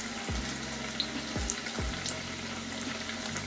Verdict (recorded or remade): recorded